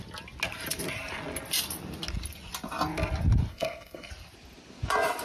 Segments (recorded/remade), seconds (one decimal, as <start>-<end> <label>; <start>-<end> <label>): 0.0-3.5 recorded; 3.5-4.1 remade; 4.1-5.2 recorded